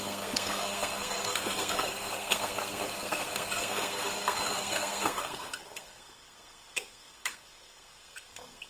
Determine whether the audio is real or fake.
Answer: fake